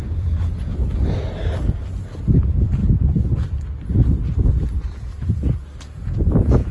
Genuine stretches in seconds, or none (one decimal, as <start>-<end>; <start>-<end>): 0.7-2.2; 2.8-5.8